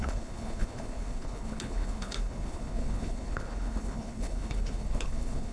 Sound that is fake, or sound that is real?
fake